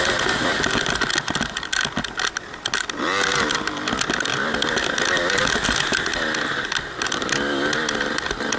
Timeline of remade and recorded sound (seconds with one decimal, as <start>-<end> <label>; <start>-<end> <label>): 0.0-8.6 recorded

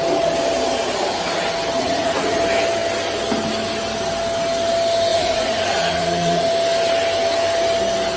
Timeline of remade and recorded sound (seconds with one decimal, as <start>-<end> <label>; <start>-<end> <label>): 0.0-1.8 recorded; 1.8-2.4 remade; 2.4-5.1 recorded; 5.1-6.5 remade; 6.5-8.2 recorded

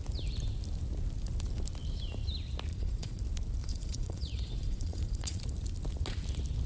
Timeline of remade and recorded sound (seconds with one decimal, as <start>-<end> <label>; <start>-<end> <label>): 0.0-2.7 recorded; 2.7-3.2 remade; 3.2-3.6 recorded; 3.6-5.4 remade; 5.4-6.7 recorded